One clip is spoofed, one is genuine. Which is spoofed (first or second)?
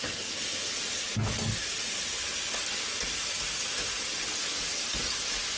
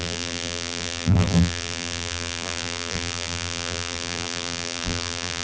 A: second